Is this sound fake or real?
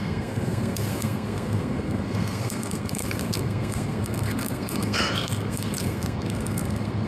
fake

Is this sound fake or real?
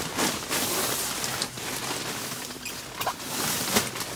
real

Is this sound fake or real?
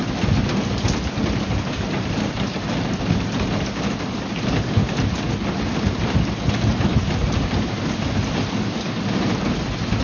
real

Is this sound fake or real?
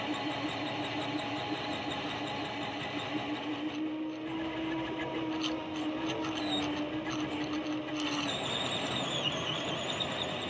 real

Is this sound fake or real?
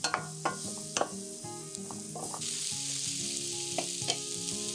real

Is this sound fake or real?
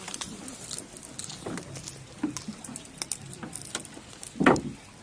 real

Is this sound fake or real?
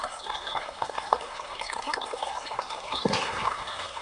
fake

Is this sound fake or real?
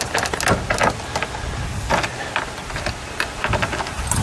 real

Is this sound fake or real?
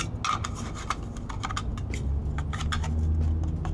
real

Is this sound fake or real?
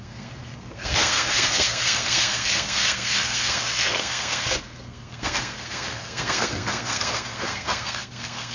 fake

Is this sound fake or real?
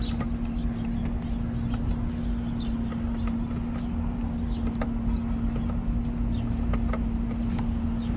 real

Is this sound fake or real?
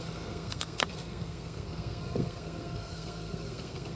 fake